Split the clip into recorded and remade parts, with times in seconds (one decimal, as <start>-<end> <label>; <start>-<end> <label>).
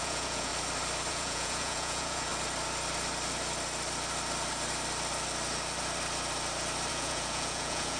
0.0-0.5 remade; 0.5-1.1 recorded; 1.1-2.3 remade; 2.3-6.9 recorded; 6.9-8.0 remade